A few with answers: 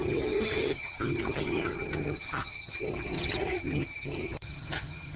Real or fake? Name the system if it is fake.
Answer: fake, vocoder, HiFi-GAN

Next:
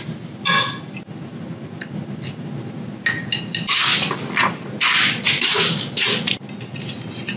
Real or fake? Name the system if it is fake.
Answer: real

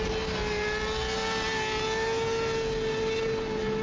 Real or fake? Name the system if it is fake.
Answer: real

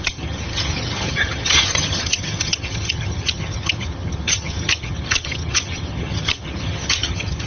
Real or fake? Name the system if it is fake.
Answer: fake, vocoder, HiFi-GAN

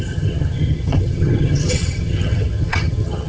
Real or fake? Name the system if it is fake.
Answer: fake, vocoder, HiFi-GAN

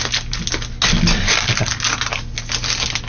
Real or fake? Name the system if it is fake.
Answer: real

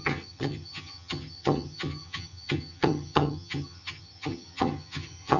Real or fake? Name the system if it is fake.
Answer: fake, vocoder, HiFi-GAN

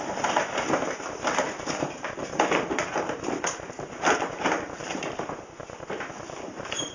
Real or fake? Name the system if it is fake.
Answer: real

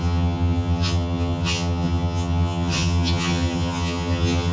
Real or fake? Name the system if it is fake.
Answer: fake, vocoder, HiFi-GAN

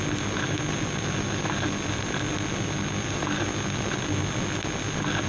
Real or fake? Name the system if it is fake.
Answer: real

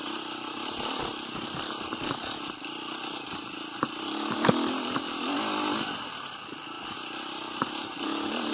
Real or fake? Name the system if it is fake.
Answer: real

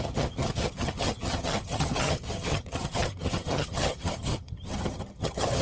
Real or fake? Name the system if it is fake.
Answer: fake, vocoder, HiFi-GAN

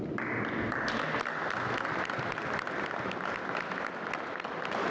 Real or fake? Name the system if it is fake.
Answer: real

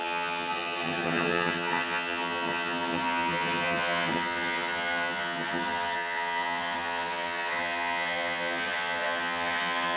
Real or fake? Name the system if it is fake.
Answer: fake, vocoder, HiFi-GAN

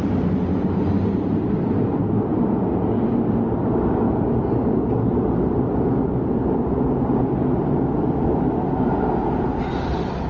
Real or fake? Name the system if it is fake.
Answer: real